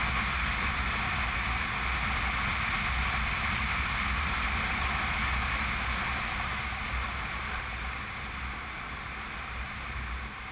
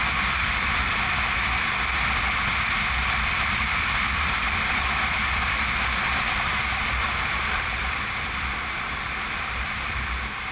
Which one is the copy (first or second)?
second